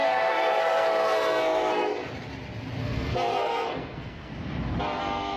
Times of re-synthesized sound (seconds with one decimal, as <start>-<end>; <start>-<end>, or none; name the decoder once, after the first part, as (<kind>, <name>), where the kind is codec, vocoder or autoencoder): 0.0-1.9 (codec, SNAC); 2.8-4.3; 5.0-5.4